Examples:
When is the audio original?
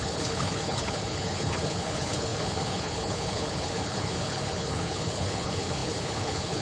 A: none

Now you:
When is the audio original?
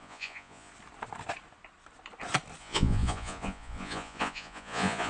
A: 0.7-2.6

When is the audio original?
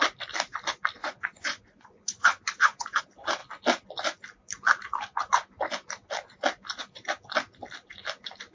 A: 0.0-1.0; 3.0-8.5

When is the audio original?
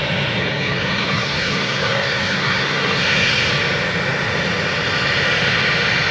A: 0.0-0.4; 3.5-6.1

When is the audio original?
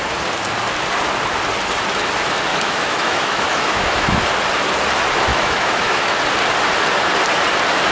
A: 0.0-2.5; 4.2-5.3; 6.2-7.9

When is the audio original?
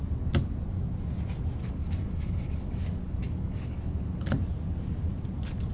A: 0.0-1.6; 4.2-5.7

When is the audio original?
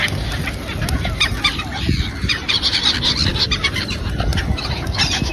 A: 0.0-5.3